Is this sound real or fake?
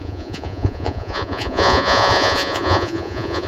fake